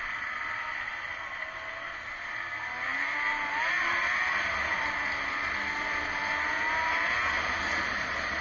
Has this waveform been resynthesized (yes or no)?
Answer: no